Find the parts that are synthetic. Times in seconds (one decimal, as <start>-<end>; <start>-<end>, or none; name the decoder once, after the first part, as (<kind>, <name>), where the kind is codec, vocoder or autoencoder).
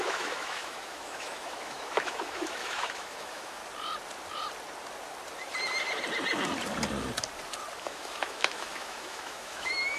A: 0.0-3.6 (autoencoder, DAC-VAE); 7.8-10.0